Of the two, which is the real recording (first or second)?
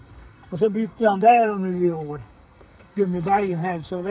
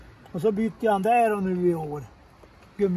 second